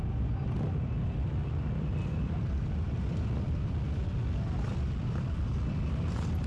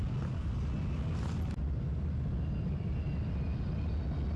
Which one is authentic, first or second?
second